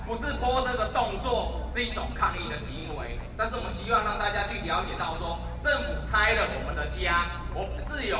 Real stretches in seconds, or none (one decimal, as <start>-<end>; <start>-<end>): 0.0-8.2

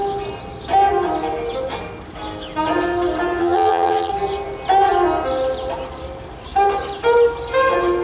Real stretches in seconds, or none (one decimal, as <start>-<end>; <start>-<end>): 0.0-3.4; 4.1-8.0

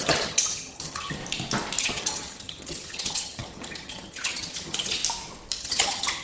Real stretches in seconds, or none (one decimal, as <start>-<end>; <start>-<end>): 1.2-1.8; 5.0-5.6

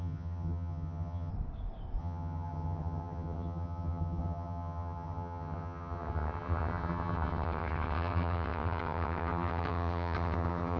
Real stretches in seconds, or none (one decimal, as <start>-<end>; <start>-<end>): 1.3-2.0

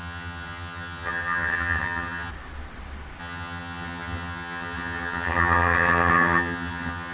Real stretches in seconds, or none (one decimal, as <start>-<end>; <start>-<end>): 2.3-3.2

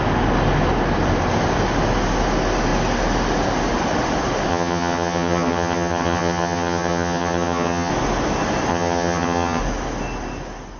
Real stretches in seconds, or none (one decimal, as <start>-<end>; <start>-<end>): 0.0-4.5; 7.9-8.7; 9.6-10.8

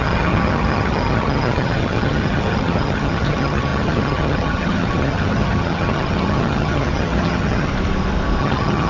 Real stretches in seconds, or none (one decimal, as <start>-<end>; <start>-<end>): 7.7-8.4